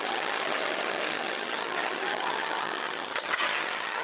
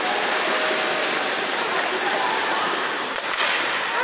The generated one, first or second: first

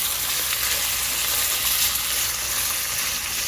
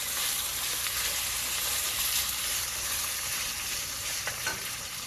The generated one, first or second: second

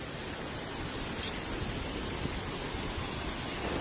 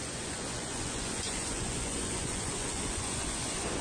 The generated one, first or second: second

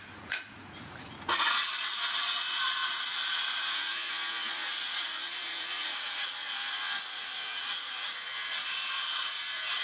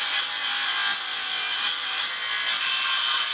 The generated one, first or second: first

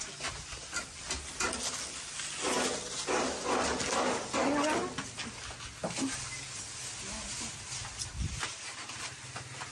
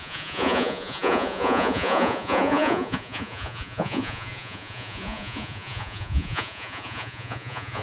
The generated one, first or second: second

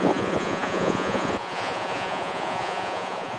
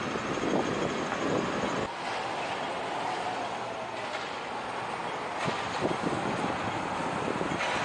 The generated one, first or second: first